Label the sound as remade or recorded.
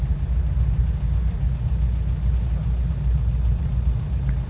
recorded